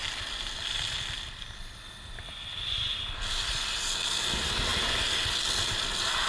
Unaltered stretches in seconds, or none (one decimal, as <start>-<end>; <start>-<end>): 0.0-6.3